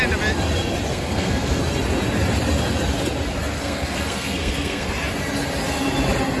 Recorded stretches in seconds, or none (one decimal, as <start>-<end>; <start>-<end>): 0.0-0.9; 1.6-3.6; 4.9-6.4